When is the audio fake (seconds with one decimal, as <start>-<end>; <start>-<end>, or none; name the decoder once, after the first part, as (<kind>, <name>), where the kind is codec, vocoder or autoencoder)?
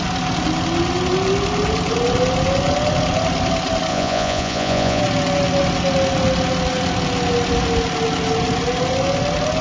3.9-5.0 (vocoder, Vocos)